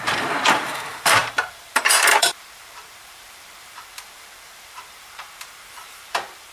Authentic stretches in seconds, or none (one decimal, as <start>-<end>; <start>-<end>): none